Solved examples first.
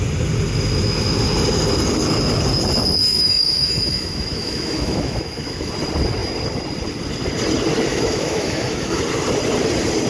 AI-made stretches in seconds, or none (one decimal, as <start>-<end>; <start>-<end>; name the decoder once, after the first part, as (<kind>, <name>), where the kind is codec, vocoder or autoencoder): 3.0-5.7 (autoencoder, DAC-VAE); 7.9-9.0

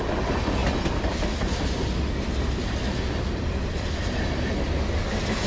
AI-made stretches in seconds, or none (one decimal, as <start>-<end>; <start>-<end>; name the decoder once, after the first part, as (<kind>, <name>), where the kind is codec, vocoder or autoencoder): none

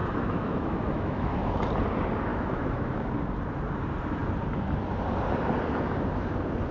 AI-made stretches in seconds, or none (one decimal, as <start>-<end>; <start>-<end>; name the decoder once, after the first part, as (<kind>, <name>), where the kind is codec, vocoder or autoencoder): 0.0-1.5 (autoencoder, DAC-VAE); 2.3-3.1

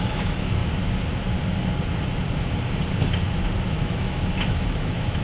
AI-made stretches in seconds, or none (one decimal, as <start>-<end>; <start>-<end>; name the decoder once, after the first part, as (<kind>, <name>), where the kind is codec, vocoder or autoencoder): 0.0-0.6 (autoencoder, DAC-VAE); 3.7-5.2

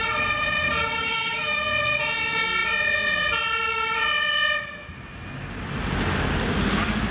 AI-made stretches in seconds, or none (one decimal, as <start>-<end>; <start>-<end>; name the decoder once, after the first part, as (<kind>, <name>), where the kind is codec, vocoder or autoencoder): 1.0-1.6 (autoencoder, DAC-VAE)

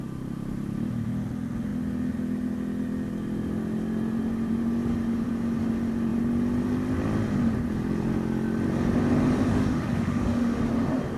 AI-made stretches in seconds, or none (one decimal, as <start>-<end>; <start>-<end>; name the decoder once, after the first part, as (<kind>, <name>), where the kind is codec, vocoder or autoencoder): 9.5-10.6 (autoencoder, DAC-VAE)

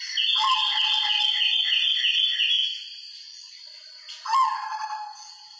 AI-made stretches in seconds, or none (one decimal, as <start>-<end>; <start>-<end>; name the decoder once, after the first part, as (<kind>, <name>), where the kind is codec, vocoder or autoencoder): none

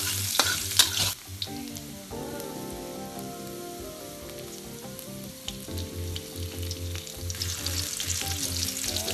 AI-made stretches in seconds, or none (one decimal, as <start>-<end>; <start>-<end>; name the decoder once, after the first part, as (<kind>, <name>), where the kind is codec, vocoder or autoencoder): none